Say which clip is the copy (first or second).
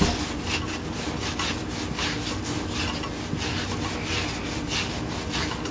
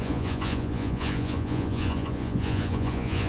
second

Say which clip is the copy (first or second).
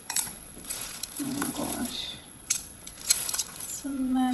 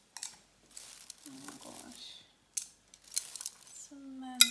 first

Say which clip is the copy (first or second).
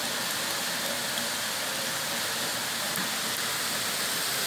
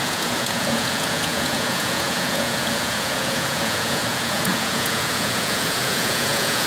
second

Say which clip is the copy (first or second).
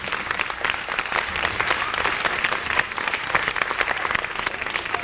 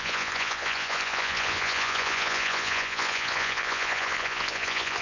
second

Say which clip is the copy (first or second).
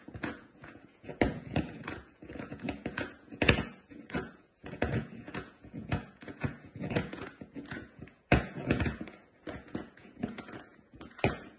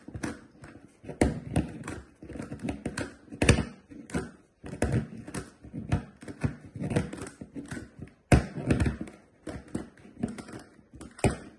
first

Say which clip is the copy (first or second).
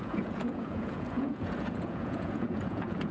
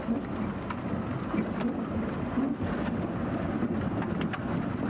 first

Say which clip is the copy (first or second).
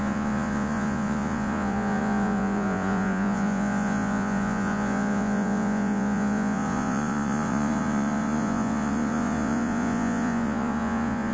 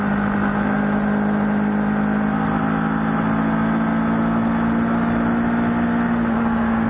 first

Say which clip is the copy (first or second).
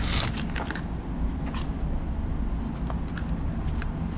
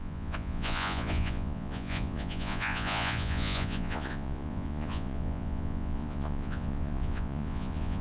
second